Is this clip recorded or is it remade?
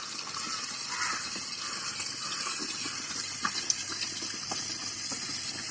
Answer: recorded